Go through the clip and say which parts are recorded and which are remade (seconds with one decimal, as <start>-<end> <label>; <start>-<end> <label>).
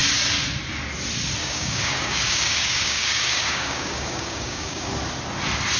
0.0-1.4 recorded; 1.4-4.9 remade; 4.9-5.8 recorded